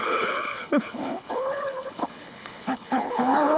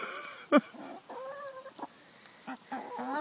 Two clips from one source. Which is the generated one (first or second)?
first